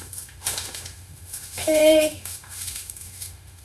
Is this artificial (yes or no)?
yes